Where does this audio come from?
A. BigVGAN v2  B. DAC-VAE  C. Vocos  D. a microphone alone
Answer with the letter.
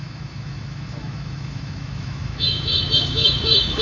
B